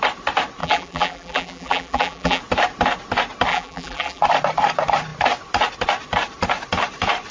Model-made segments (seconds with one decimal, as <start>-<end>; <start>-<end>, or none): 0.6-2.4; 3.5-4.2